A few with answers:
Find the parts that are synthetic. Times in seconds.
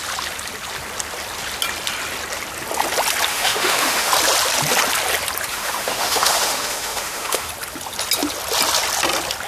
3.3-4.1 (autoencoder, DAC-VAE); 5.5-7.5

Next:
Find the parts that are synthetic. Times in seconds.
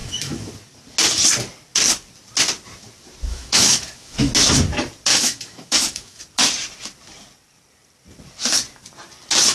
0.0-0.5 (autoencoder, DAC-VAE); 3.3-4.3; 5.1-6.2